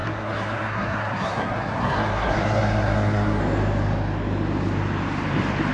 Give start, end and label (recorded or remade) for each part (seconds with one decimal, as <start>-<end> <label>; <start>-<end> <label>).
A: 0.0-3.4 remade; 3.4-5.7 recorded